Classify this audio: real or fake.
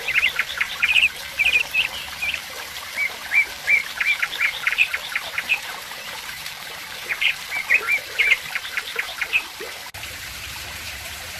fake